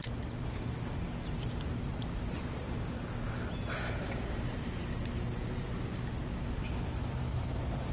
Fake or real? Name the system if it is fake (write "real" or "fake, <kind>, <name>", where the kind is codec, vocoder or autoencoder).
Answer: real